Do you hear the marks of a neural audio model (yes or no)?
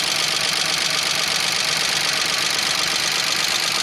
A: no